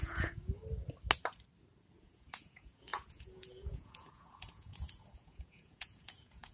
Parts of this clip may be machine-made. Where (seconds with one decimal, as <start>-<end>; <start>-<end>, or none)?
0.0-0.6; 2.0-6.5